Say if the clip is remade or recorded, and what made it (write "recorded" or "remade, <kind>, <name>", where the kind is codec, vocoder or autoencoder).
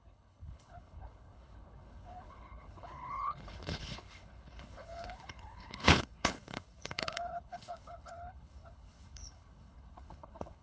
remade, codec, HILCodec